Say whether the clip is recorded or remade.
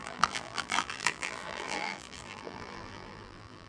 remade